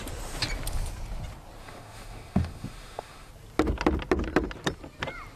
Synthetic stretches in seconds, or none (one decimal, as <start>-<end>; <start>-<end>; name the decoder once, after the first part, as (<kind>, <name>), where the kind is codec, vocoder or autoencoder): 1.6-3.3 (autoencoder, DAC-VAE)